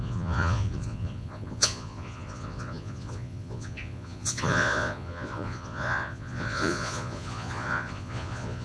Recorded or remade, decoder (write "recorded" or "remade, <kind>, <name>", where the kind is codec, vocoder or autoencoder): remade, vocoder, Vocos